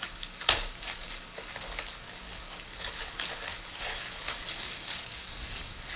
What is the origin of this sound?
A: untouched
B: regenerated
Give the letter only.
B